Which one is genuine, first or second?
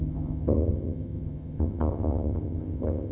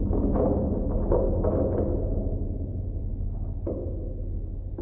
second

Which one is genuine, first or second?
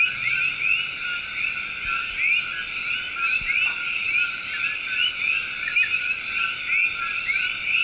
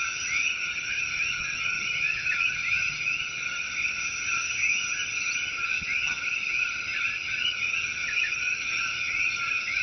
first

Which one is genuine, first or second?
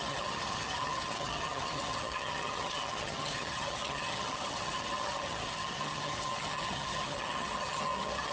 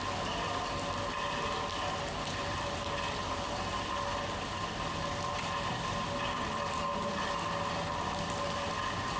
second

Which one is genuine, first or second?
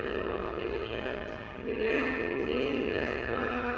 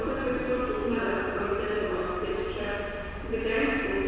second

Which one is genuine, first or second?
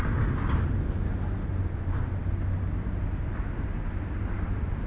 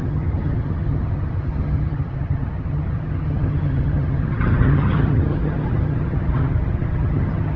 first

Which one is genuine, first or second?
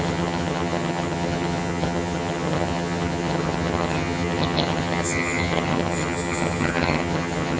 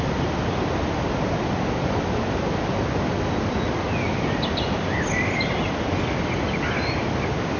second